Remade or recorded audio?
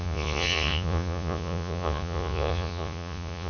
remade